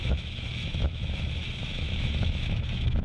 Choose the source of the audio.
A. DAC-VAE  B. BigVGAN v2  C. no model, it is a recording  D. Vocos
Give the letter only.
A